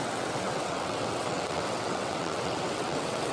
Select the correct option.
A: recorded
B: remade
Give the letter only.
B